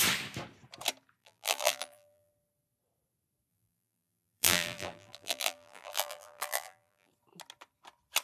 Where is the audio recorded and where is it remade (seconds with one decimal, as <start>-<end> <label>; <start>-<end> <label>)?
0.0-1.2 recorded; 1.2-2.3 remade; 2.3-3.5 recorded; 3.5-7.1 remade; 7.1-8.2 recorded